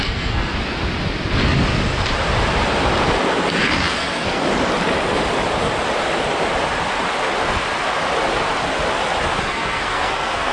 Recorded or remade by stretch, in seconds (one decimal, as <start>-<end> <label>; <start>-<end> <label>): 0.0-0.5 remade; 0.5-3.9 recorded; 3.9-4.4 remade; 4.4-9.4 recorded; 9.4-10.5 remade